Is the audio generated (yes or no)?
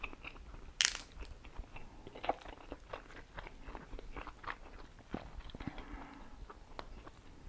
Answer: no